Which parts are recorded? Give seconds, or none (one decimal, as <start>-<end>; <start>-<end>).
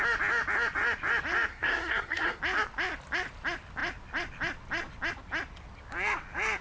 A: 0.0-1.5; 2.4-6.6